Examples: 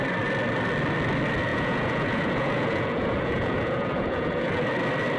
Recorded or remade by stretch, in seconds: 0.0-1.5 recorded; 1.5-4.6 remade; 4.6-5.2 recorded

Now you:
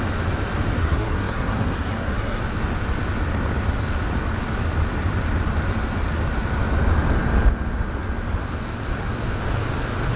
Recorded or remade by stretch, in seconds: 0.0-0.8 recorded; 0.8-2.4 remade; 2.4-10.2 recorded

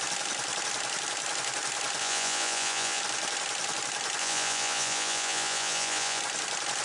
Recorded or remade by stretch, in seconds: 0.0-2.0 recorded; 2.0-3.0 remade; 3.0-4.2 recorded; 4.2-6.2 remade; 6.2-6.8 recorded

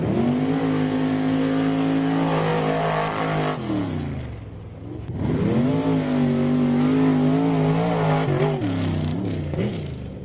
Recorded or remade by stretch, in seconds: 0.0-10.2 recorded